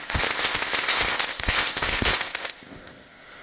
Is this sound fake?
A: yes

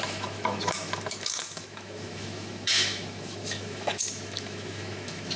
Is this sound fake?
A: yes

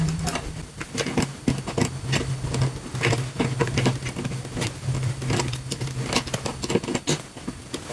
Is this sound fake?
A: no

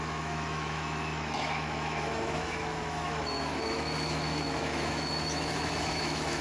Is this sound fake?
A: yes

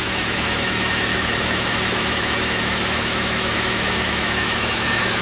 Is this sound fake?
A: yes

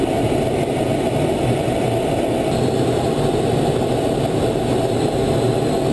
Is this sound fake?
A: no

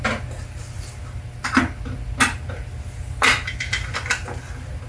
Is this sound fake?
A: no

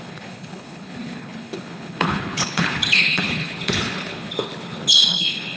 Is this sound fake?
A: yes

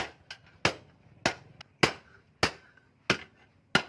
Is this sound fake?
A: no